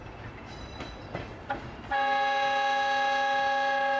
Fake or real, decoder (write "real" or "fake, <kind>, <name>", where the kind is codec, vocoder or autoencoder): real